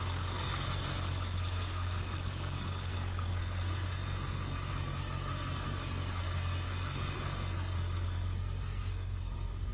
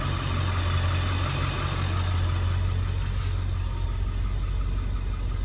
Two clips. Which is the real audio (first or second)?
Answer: second